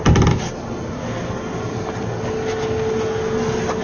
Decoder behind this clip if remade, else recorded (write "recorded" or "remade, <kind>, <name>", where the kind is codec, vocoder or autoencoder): recorded